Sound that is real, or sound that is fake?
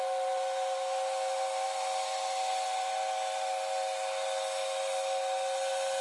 real